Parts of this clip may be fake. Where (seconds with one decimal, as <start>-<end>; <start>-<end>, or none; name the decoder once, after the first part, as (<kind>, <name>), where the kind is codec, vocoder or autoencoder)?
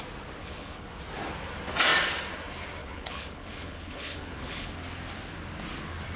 0.4-0.9 (codec, HILCodec); 2.8-4.7